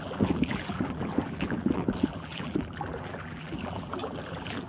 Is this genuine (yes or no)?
no